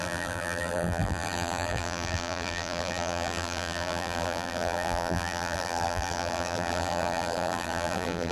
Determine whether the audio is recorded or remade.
remade